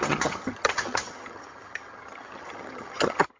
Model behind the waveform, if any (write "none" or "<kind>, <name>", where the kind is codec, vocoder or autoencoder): vocoder, HiFi-GAN